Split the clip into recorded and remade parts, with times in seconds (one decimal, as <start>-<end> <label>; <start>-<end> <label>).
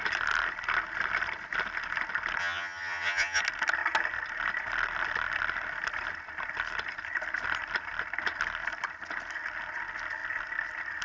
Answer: 0.0-2.4 recorded; 2.4-3.4 remade; 3.4-11.0 recorded